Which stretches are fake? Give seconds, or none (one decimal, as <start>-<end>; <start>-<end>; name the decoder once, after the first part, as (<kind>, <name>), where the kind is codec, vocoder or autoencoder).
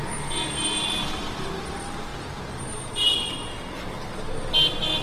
none